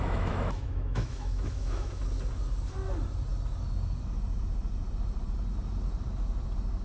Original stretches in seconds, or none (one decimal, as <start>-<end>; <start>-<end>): 2.0-6.8